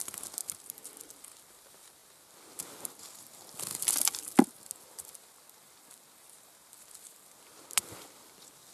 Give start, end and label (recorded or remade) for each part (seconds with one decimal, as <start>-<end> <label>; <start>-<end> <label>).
0.0-0.4 recorded; 0.4-0.9 remade; 0.9-8.7 recorded